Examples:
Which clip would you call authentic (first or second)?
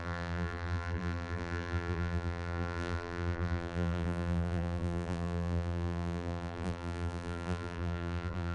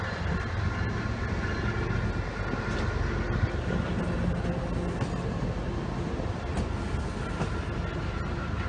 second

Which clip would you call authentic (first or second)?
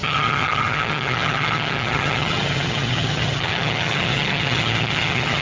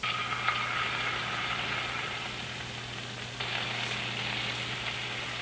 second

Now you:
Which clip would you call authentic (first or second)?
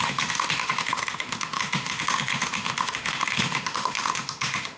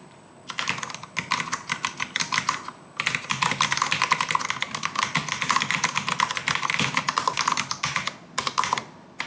second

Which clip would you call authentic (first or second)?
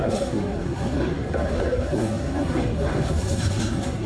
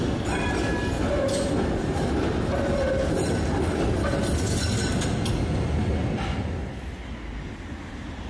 second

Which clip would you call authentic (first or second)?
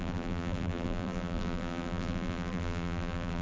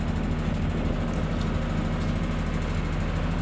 second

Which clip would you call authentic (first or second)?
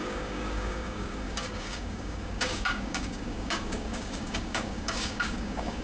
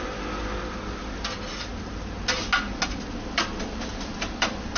second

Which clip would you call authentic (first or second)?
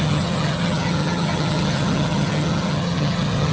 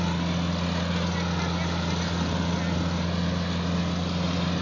second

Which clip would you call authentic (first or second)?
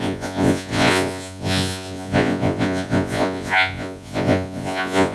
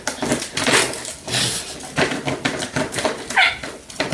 second